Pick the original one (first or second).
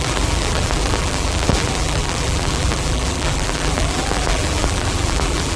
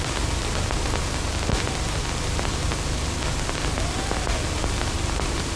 second